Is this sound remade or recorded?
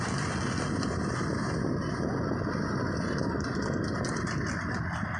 recorded